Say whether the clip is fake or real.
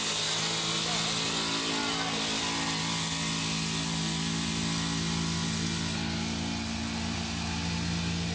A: real